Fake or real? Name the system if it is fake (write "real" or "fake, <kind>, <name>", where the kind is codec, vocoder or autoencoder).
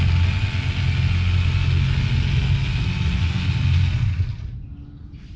real